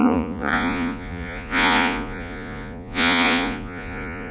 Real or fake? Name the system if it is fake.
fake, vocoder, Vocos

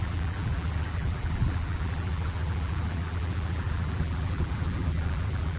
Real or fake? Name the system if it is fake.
fake, vocoder, BigVGAN v2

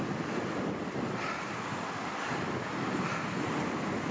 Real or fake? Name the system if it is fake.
real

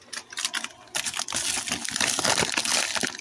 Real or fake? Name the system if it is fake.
real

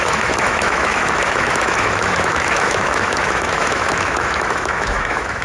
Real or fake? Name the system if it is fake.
fake, autoencoder, DAC-VAE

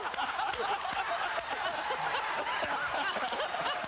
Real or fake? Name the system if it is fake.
real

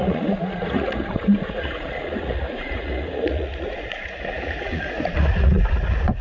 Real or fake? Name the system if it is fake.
fake, vocoder, Vocos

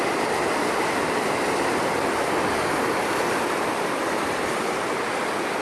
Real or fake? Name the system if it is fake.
real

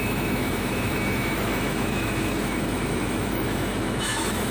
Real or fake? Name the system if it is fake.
fake, autoencoder, DAC-VAE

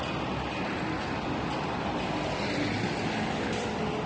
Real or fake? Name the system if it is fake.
real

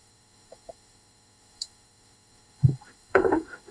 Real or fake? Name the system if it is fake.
fake, autoencoder, DAC-VAE